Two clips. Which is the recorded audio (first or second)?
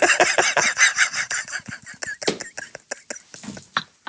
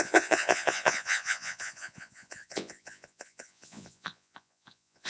first